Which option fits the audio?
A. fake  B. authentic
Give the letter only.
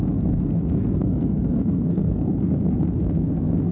A